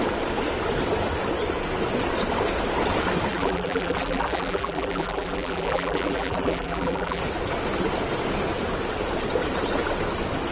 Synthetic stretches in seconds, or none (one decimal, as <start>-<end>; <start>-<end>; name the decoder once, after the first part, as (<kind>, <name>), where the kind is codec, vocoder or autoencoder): 3.3-7.2 (vocoder, BigVGAN v2)